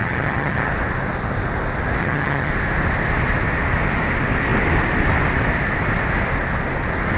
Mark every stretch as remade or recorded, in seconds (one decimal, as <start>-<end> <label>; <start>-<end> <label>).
0.0-0.7 remade; 0.7-2.0 recorded; 2.0-2.5 remade; 2.5-7.2 recorded